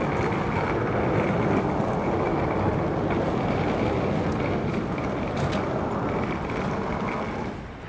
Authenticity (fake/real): real